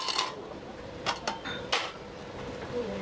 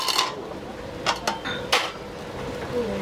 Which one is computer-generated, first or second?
first